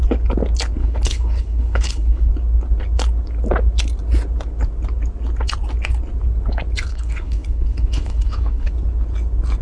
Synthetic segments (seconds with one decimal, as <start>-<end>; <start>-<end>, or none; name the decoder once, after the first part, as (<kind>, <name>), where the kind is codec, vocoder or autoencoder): 0.8-2.3 (codec, HILCodec); 6.9-8.7